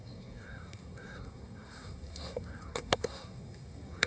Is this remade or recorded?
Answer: remade